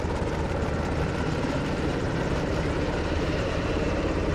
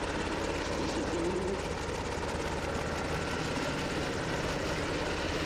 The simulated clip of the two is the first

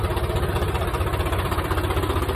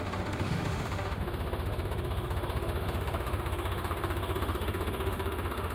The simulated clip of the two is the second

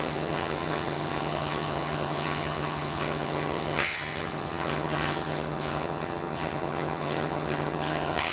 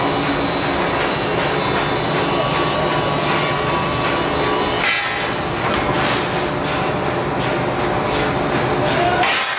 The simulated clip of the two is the first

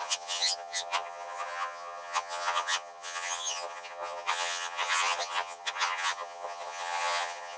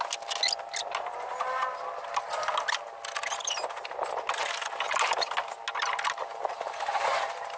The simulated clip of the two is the first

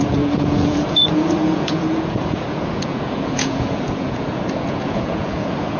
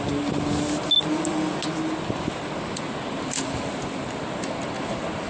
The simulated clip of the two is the first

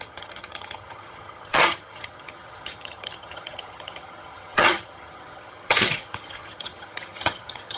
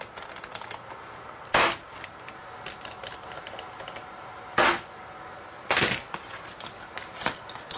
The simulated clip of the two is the first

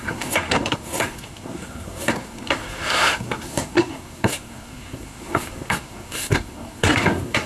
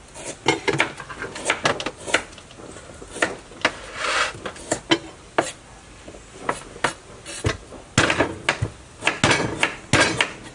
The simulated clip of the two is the first